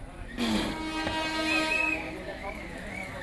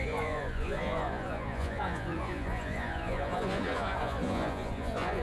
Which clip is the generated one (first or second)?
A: second